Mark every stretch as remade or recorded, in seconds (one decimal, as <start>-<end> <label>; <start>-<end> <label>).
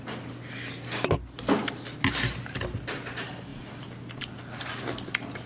0.0-5.5 recorded